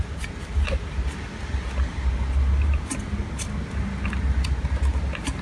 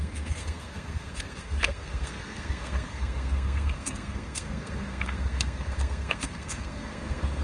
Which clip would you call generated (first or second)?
second